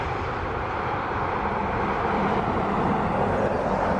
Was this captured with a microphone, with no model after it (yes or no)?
no